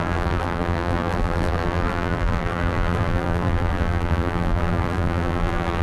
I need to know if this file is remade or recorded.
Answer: remade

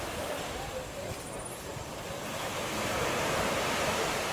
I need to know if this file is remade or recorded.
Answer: recorded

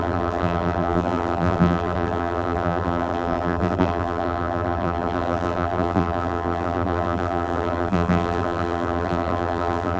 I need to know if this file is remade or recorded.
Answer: remade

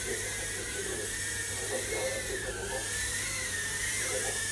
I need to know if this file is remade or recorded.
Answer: remade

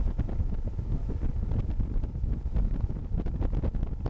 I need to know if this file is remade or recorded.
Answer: recorded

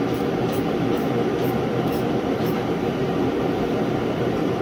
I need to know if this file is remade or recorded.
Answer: remade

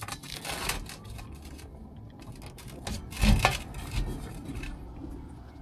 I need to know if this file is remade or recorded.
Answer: recorded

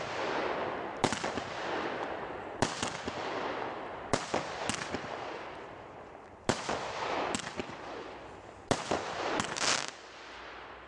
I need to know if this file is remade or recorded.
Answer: recorded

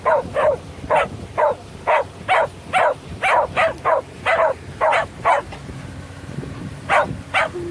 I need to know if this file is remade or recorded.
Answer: remade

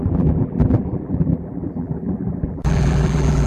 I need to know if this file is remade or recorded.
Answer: remade